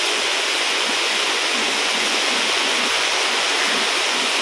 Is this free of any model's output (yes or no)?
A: no